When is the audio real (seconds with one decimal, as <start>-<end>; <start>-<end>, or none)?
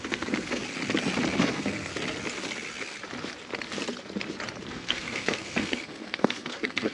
0.6-1.4; 1.9-4.7